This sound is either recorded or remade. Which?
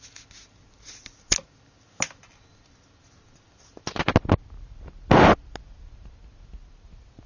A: recorded